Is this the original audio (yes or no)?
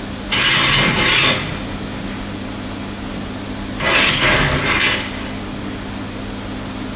yes